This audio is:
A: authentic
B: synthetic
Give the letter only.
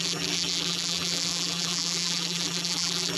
B